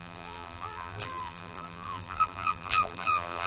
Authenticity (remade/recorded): remade